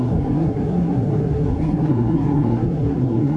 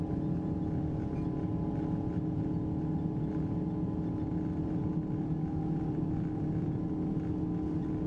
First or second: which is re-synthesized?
first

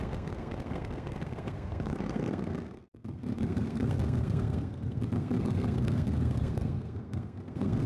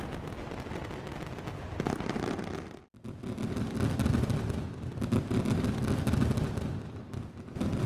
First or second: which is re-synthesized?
first